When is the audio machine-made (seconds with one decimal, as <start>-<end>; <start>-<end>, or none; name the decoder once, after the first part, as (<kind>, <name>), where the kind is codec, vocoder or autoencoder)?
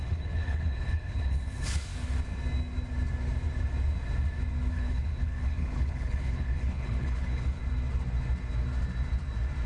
0.0-1.9 (codec, HILCodec); 4.7-7.6